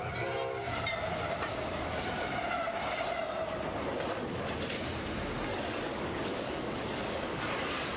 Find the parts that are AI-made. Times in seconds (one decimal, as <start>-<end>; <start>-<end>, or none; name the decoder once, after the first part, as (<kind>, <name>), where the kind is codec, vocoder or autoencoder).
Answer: 5.5-7.4 (codec, DAC)